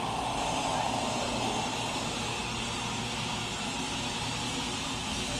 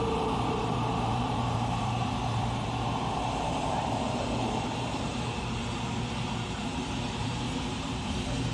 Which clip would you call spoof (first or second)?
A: second